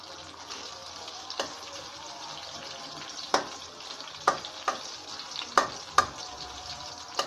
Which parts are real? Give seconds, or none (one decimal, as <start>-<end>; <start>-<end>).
0.0-7.3